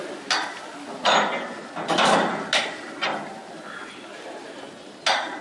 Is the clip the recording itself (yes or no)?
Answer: yes